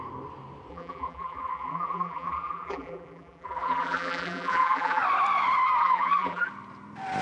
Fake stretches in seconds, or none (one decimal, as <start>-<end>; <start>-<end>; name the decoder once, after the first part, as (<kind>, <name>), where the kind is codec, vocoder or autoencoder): 0.7-5.0 (vocoder, BigVGAN v2); 5.8-6.5